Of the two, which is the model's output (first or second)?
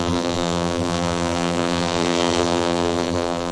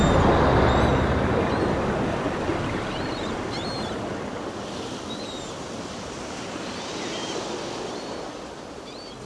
first